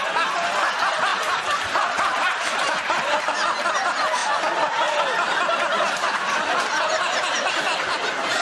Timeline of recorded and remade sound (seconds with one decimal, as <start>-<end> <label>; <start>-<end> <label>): 0.0-1.1 recorded; 1.1-3.2 remade; 3.2-8.4 recorded